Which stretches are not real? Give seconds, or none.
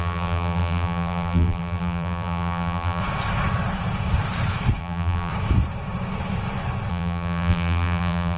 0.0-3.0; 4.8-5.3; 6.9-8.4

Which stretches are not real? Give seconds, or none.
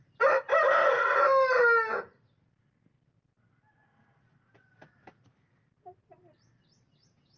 0.0-0.5; 4.9-7.4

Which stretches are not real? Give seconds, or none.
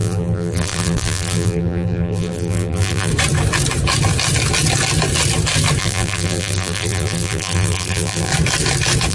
0.0-3.1; 5.8-8.3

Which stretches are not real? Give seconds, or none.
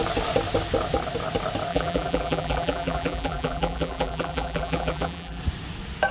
1.7-5.4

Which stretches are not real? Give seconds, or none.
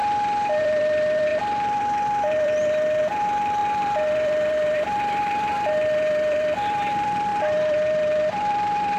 0.6-9.0